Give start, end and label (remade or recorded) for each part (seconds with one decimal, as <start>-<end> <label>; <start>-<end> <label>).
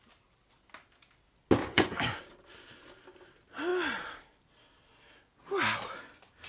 0.0-1.6 recorded; 1.6-2.2 remade; 2.2-6.5 recorded